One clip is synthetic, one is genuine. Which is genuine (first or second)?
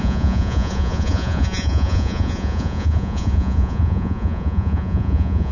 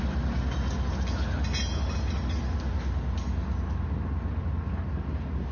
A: second